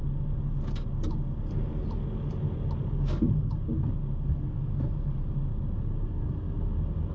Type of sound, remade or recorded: recorded